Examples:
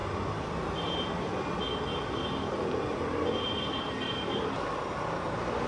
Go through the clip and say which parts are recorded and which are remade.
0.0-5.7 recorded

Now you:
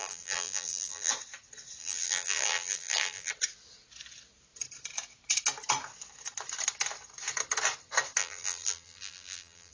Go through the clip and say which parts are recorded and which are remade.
0.0-1.1 remade; 1.1-1.8 recorded; 1.8-3.3 remade; 3.3-8.2 recorded; 8.2-9.7 remade

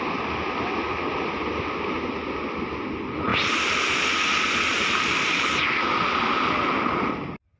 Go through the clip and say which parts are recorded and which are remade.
0.0-7.6 recorded

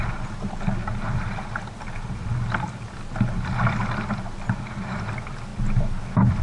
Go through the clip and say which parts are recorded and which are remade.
0.0-6.4 recorded

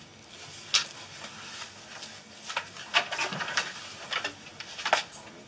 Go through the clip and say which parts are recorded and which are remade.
0.0-4.5 recorded; 4.5-5.0 remade; 5.0-5.5 recorded